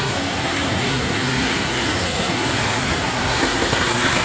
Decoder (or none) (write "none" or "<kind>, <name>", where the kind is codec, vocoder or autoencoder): codec, SNAC